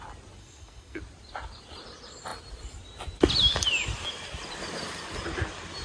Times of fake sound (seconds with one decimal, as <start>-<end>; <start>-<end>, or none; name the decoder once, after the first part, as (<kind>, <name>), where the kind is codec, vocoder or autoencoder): 0.4-1.0 (codec, SNAC)